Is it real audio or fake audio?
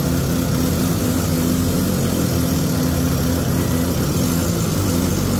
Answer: real